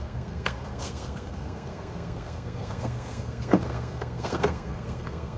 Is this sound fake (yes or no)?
yes